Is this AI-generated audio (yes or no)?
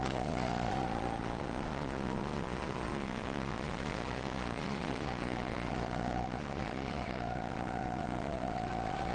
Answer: yes